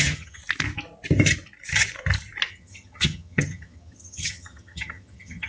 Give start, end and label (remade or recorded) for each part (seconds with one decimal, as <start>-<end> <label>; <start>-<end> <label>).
0.0-0.4 remade; 0.4-2.5 recorded; 2.5-5.5 remade